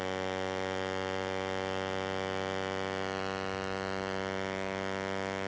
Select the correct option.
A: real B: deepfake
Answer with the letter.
A